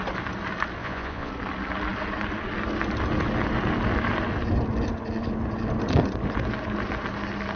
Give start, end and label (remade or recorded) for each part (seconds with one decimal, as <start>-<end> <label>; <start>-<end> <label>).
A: 0.0-0.8 recorded; 0.8-1.3 remade; 1.3-7.6 recorded